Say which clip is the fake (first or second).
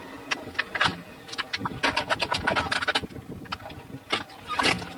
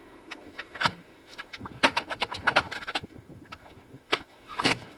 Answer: second